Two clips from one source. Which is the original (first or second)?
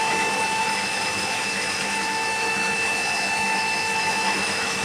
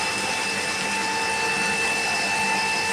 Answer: second